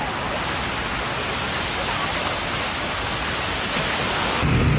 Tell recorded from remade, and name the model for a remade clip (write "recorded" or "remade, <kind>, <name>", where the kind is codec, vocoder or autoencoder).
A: recorded